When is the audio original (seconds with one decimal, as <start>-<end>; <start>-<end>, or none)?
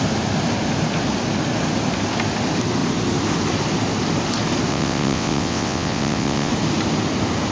0.0-4.7; 6.5-7.5